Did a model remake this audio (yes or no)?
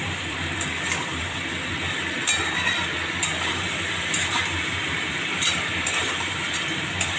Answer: yes